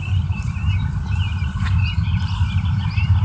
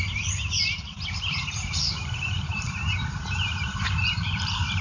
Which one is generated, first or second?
second